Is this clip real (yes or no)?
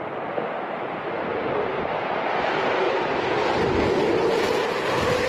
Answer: yes